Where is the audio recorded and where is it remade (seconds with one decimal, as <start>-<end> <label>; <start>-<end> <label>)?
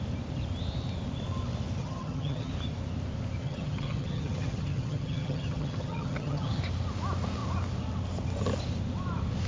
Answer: 0.0-1.8 recorded; 1.8-2.5 remade; 2.5-3.4 recorded; 3.4-6.6 remade; 6.6-9.5 recorded